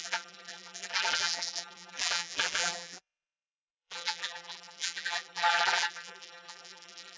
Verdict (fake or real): fake